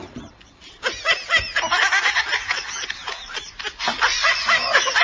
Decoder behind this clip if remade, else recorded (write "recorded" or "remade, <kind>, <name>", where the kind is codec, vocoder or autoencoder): recorded